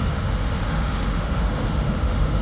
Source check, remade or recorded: remade